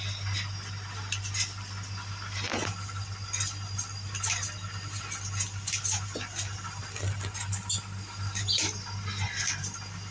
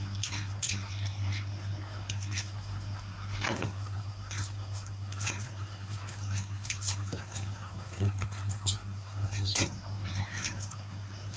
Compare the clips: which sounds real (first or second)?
first